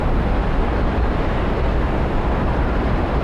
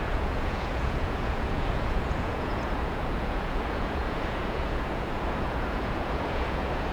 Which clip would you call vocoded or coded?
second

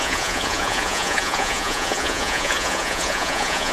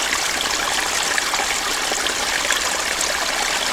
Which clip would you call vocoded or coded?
first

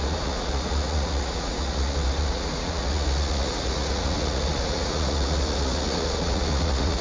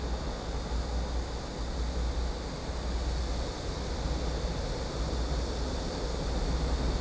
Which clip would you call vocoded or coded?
first